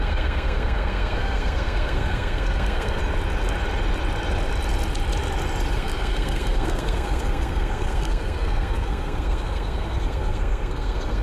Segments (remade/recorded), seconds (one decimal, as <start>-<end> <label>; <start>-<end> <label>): 0.0-3.0 remade; 3.0-5.7 recorded; 5.7-11.2 remade